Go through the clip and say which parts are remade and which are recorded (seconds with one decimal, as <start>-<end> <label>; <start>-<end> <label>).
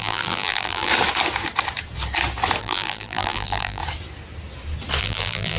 0.0-0.9 remade; 0.9-2.6 recorded; 2.6-3.8 remade; 3.8-5.0 recorded; 5.0-5.6 remade